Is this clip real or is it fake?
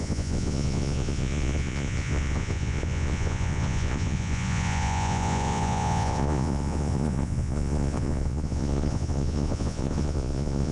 fake